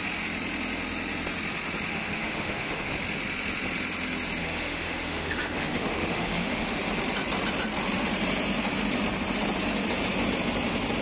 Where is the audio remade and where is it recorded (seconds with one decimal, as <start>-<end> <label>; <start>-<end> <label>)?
0.0-1.9 recorded; 1.9-2.9 remade; 2.9-4.4 recorded; 4.4-6.8 remade; 6.8-11.0 recorded